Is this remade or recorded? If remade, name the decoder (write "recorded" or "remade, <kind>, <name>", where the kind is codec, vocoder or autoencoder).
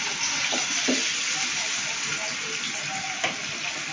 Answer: recorded